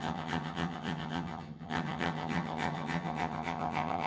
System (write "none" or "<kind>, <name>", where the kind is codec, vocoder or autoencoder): vocoder, HiFi-GAN